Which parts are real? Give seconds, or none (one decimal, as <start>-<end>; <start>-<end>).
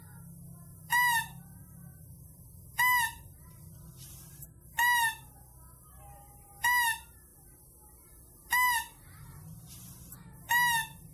0.0-11.1